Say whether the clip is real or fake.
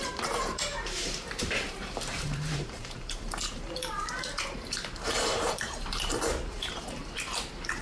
fake